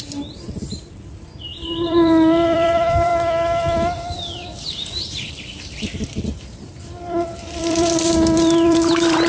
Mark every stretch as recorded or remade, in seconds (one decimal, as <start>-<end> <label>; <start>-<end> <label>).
0.0-3.1 remade; 3.1-5.3 recorded; 5.3-9.3 remade